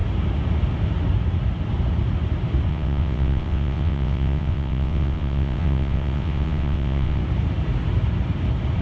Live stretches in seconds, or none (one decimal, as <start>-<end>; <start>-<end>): 0.0-2.7; 7.2-8.8